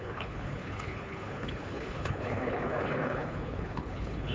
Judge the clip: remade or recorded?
remade